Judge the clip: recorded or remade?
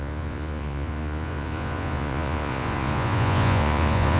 remade